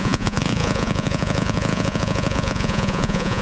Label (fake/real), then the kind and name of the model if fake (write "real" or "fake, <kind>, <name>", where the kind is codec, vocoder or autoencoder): fake, vocoder, Vocos